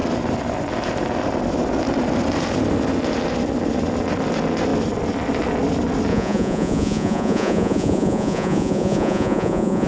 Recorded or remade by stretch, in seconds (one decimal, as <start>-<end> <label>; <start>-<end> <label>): 0.0-6.1 recorded; 6.1-9.9 remade